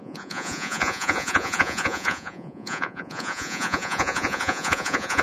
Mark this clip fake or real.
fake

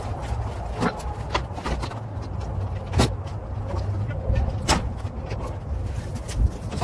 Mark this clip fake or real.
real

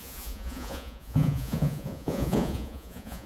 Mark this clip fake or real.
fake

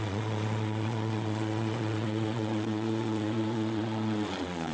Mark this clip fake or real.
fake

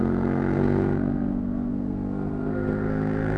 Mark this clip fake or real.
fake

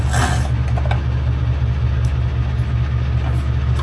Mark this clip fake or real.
real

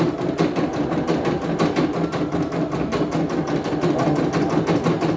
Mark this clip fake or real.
real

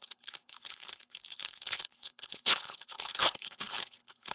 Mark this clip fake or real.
fake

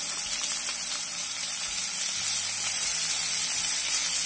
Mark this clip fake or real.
real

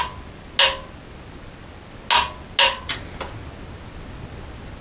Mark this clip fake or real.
real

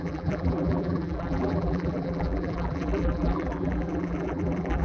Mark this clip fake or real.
fake